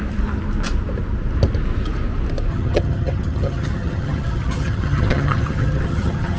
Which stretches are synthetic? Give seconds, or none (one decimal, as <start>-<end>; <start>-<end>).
2.5-6.4